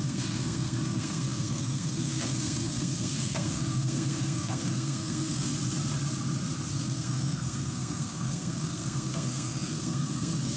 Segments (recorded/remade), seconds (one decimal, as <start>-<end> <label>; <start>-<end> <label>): 0.0-5.5 remade; 5.5-6.7 recorded; 6.7-10.6 remade